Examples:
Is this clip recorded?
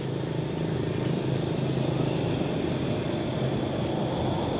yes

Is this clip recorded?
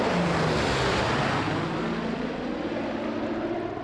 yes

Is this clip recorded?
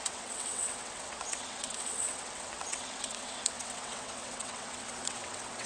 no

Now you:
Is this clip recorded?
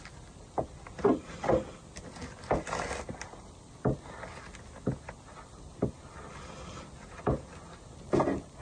yes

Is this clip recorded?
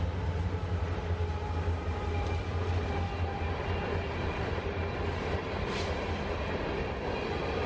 yes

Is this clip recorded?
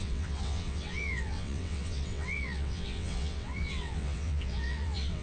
no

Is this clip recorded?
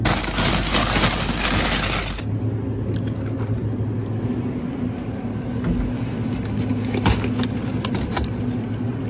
yes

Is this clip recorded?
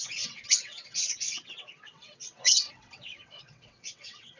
no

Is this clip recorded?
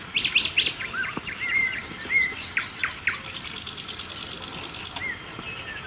yes